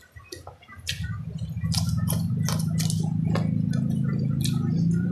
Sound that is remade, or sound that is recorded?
recorded